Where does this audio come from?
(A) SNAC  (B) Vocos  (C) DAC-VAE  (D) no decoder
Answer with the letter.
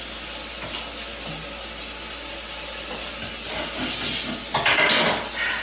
D